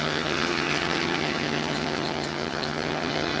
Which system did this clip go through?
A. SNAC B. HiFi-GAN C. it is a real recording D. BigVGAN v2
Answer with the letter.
B